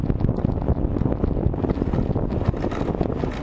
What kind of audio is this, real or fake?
real